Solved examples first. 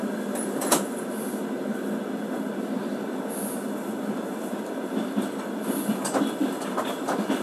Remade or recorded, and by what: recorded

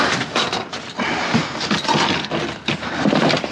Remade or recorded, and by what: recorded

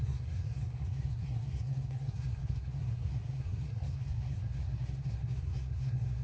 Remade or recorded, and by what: remade, codec, SNAC